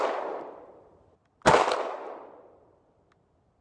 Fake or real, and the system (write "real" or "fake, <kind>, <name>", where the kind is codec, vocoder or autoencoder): real